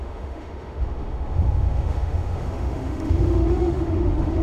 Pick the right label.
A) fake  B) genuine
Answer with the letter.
A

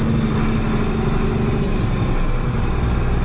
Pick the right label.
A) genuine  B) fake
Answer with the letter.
A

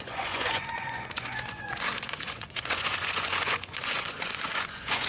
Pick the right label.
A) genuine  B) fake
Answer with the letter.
B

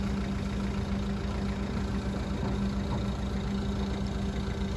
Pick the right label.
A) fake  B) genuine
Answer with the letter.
B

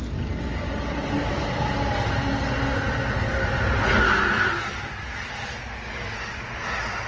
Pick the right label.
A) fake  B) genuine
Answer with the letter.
B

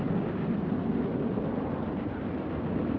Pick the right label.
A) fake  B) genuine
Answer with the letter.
B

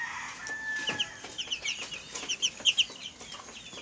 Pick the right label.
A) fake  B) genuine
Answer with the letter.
B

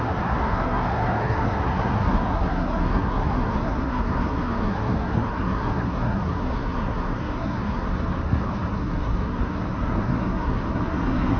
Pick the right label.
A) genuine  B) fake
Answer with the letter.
B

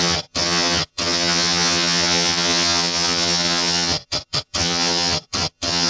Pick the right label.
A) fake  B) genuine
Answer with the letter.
A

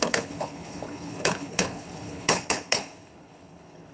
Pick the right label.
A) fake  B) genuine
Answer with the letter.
A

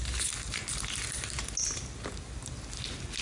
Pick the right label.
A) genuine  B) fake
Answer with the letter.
A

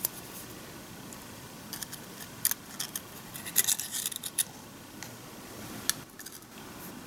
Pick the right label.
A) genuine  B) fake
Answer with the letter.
A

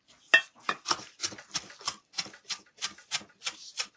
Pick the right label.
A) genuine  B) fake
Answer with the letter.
A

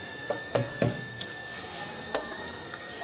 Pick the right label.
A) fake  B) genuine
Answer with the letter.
A